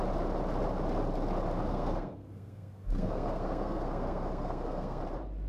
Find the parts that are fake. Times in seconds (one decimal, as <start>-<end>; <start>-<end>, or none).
1.7-5.0

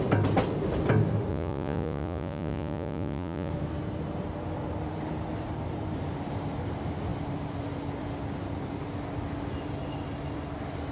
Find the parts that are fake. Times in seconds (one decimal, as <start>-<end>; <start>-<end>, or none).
1.3-3.5

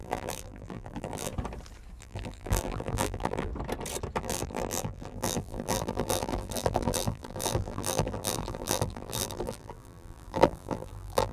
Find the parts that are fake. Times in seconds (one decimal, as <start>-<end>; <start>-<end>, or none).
0.0-1.3; 2.0-3.5; 4.2-11.3